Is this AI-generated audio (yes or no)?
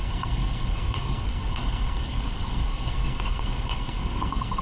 yes